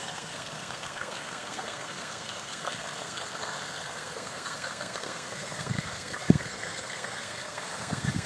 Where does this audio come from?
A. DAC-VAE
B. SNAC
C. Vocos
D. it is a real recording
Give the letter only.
B